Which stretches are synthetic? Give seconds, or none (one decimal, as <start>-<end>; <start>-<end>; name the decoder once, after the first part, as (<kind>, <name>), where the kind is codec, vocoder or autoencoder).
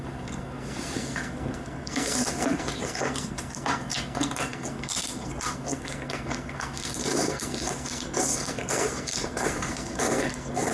0.0-10.7 (codec, SNAC)